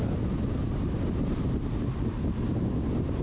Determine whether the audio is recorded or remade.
recorded